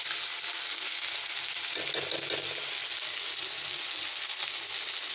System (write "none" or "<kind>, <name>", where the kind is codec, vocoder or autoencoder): none